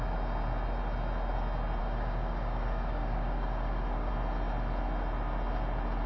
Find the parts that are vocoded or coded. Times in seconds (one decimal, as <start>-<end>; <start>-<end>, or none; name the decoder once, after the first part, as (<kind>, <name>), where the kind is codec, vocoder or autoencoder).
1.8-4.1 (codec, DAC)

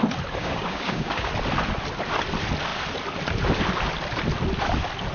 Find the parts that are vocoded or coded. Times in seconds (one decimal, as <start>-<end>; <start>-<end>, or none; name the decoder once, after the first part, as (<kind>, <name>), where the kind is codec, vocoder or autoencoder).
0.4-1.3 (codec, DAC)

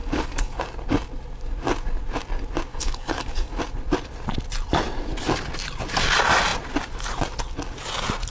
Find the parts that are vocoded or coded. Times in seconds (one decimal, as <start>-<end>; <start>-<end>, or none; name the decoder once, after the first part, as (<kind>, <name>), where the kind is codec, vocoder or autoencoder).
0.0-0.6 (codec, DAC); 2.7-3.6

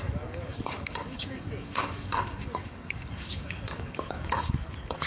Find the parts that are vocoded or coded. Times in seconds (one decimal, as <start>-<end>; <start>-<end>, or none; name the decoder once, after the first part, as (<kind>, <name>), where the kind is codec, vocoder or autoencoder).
0.0-5.1 (codec, DAC)

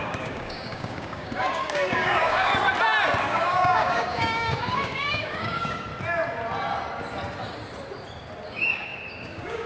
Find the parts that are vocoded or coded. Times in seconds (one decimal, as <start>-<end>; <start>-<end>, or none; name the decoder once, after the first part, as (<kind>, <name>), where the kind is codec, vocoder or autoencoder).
0.0-2.5 (codec, DAC); 3.2-5.9; 8.5-9.7

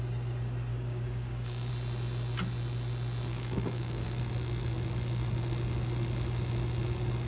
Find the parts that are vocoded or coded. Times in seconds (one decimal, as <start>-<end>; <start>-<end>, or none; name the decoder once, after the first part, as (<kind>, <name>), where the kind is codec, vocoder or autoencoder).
0.7-1.7 (codec, DAC); 3.3-4.2

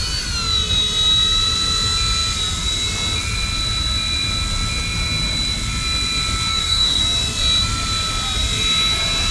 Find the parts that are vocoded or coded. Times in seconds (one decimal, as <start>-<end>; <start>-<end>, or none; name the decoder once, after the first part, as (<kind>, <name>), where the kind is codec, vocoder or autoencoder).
6.5-7.0 (codec, DAC)

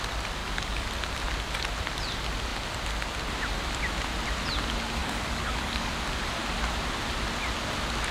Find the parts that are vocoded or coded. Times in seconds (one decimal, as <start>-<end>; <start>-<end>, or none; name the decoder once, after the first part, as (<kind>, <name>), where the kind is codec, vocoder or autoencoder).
0.4-0.9 (codec, DAC); 5.0-5.9